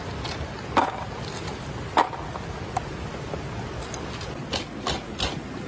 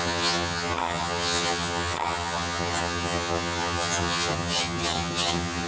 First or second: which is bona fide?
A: first